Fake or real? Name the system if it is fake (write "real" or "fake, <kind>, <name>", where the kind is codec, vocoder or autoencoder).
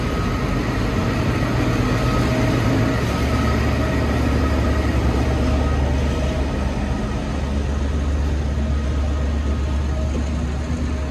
real